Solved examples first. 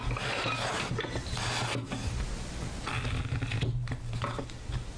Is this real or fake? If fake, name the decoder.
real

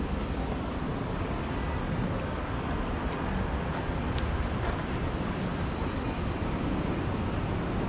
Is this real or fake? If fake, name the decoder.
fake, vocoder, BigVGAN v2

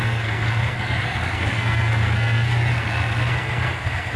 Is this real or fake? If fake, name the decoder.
fake, codec, SNAC